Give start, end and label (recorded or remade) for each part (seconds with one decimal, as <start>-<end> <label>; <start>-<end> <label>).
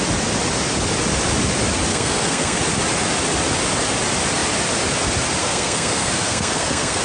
0.0-1.9 recorded; 1.9-2.6 remade; 2.6-5.4 recorded; 5.4-7.0 remade